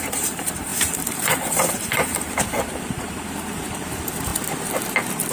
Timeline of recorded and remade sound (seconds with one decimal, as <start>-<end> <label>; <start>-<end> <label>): 0.0-4.3 remade; 4.3-5.3 recorded